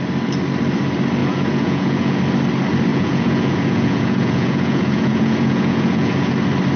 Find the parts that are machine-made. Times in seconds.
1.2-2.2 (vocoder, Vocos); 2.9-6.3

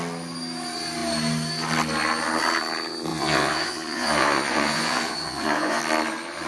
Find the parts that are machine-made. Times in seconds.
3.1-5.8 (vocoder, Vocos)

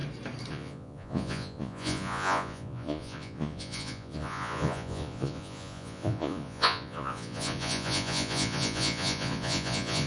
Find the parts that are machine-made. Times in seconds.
0.5-10.1 (vocoder, Vocos)